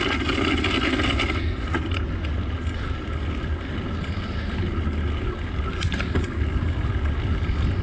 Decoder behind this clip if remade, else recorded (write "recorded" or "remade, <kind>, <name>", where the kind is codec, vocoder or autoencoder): recorded